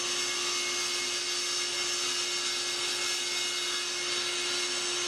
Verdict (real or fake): real